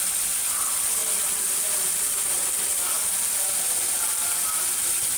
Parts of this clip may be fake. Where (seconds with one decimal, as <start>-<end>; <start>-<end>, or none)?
none